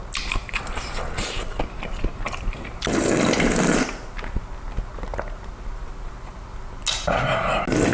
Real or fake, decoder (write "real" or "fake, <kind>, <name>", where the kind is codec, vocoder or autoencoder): real